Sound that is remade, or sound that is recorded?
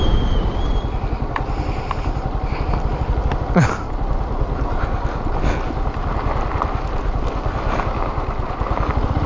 recorded